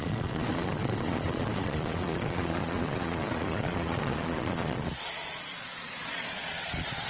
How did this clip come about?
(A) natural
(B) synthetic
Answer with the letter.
B